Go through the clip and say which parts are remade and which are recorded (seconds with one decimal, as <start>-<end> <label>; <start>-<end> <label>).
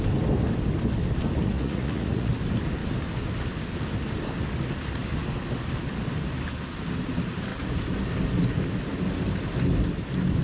0.0-1.4 recorded; 1.4-2.3 remade; 2.3-10.4 recorded